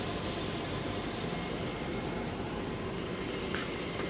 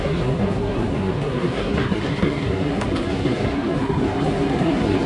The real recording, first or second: first